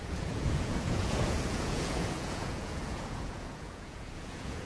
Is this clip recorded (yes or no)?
no